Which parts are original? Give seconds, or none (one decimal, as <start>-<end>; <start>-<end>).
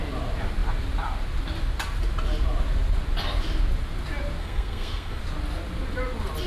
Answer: 0.0-4.4; 5.2-6.5